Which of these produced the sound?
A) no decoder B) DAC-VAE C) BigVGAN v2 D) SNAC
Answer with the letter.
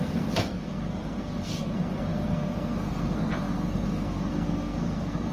D